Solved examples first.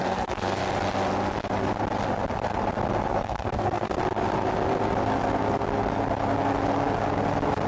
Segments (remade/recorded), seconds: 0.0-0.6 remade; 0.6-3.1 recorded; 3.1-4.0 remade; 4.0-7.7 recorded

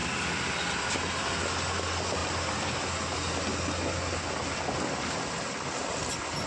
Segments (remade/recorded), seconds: 0.0-6.5 recorded

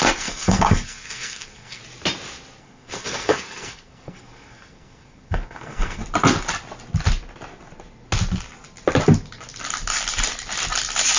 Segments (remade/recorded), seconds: 0.0-1.8 remade; 1.8-2.6 recorded; 2.6-6.0 remade; 6.0-11.2 recorded

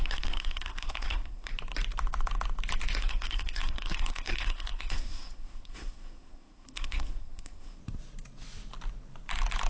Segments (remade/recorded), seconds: 0.0-1.5 remade; 1.5-3.0 recorded; 3.0-7.8 remade; 7.8-9.7 recorded